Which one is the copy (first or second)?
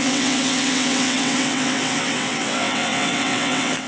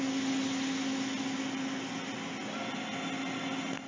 first